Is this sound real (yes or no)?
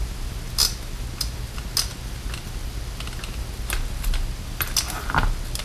yes